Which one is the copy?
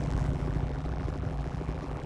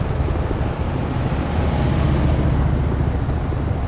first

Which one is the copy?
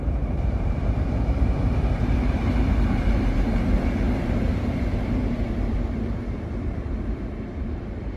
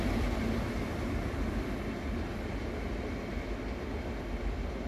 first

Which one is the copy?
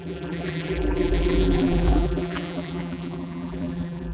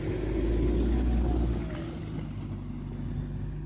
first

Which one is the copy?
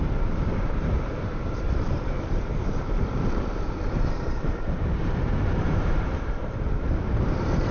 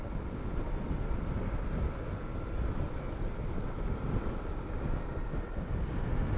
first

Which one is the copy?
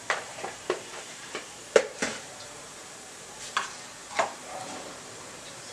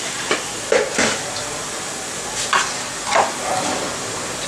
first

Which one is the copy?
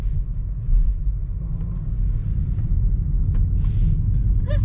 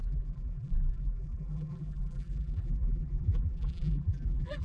second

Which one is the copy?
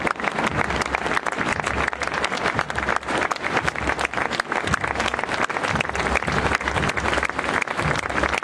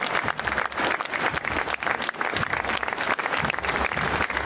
second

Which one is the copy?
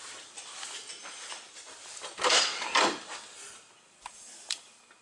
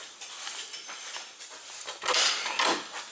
first